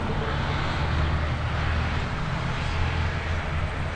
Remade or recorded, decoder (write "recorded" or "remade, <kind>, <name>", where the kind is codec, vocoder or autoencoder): recorded